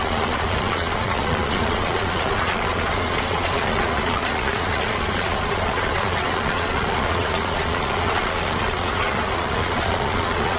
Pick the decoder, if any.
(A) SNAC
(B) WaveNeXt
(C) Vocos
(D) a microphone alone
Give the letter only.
C